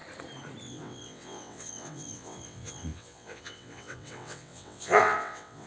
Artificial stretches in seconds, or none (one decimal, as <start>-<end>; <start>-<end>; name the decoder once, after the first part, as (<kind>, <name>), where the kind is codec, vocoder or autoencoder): 0.6-5.7 (vocoder, WaveNeXt)